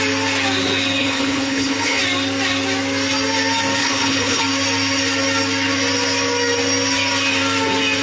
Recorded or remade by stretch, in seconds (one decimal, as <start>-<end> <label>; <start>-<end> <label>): 0.0-1.0 recorded; 1.0-2.0 remade; 2.0-3.8 recorded; 3.8-4.4 remade; 4.4-8.0 recorded